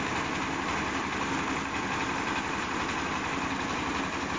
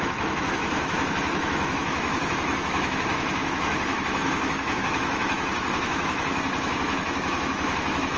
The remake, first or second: second